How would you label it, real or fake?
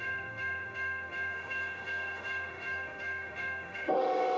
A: fake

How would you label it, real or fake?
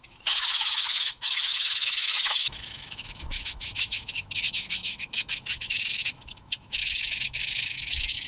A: fake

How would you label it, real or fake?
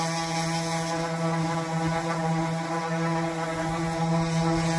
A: real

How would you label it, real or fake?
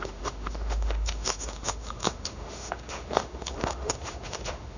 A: fake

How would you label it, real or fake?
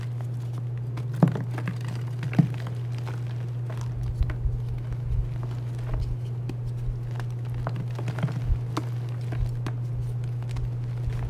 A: real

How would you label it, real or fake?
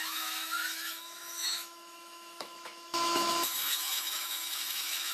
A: fake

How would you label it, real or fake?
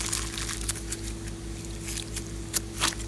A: real